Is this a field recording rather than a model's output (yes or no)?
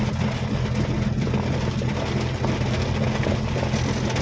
yes